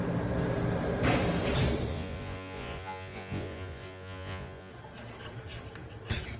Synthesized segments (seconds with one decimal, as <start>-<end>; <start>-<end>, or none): 1.9-4.7